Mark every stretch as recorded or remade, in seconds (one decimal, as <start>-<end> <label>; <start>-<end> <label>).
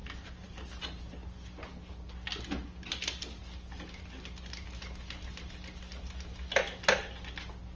0.0-7.8 recorded